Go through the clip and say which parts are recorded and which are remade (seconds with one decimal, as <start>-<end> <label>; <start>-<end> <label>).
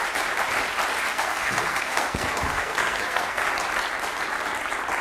0.0-1.1 recorded; 1.1-3.4 remade; 3.4-5.0 recorded